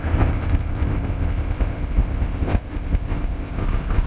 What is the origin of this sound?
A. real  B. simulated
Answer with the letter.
B